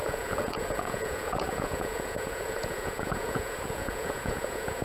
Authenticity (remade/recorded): remade